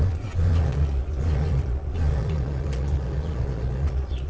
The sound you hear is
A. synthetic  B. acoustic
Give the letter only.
A